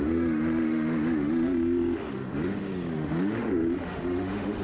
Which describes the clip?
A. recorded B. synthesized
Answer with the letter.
B